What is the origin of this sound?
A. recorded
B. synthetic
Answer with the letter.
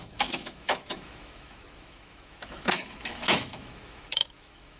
B